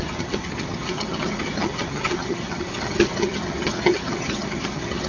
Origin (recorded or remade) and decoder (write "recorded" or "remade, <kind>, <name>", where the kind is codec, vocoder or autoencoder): remade, vocoder, HiFi-GAN